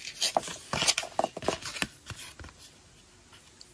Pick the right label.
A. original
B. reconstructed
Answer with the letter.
A